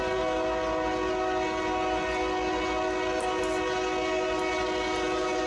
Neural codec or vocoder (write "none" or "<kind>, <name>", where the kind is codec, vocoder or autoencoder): none